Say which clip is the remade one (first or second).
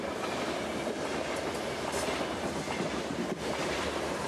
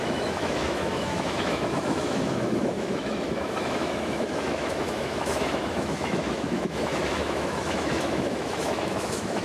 second